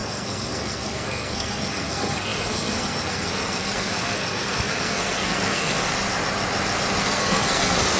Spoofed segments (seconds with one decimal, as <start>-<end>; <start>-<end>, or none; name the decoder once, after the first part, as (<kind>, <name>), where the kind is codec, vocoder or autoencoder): 0.0-5.9 (codec, SNAC); 7.0-8.0